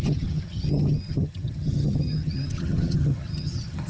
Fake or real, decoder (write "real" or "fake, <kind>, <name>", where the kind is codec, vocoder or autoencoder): fake, vocoder, HiFi-GAN